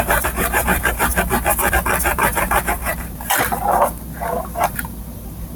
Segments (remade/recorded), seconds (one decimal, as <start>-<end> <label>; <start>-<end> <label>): 0.0-1.1 remade; 1.1-2.0 recorded; 2.0-5.6 remade